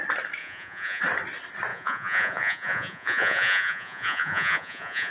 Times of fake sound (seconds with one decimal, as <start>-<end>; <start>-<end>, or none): 0.4-1.0; 1.7-5.1